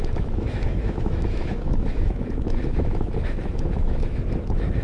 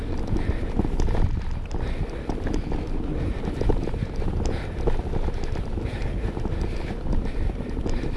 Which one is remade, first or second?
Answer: first